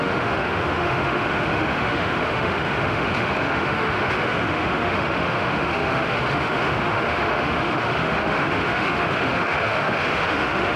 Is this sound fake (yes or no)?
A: yes